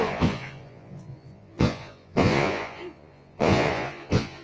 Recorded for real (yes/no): no